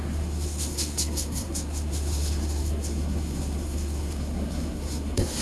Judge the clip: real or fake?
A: fake